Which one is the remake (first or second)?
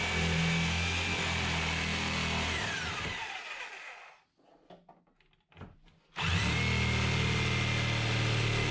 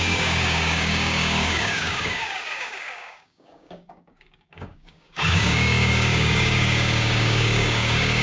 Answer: second